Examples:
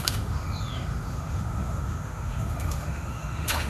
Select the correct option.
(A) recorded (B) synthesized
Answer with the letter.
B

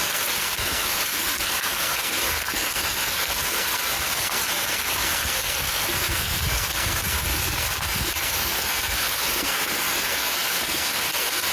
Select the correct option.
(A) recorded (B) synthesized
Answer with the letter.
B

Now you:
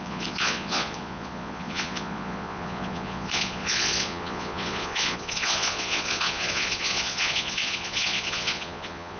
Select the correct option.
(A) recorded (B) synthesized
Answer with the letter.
B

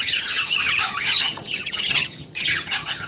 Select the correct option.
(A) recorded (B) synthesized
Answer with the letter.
B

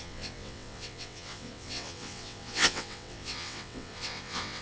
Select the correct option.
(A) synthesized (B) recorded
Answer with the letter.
A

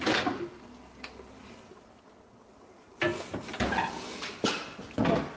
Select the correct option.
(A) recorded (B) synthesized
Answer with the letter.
A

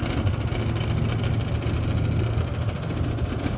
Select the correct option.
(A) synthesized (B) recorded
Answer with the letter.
B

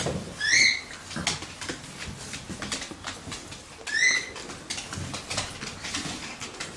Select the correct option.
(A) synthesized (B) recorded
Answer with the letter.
B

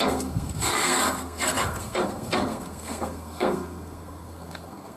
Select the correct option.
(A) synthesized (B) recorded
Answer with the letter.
A